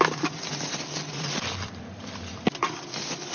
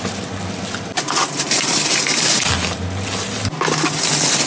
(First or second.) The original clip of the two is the second